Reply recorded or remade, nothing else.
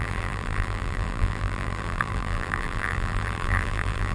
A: remade